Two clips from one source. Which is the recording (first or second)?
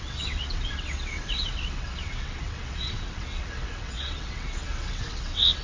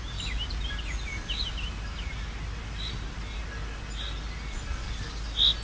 second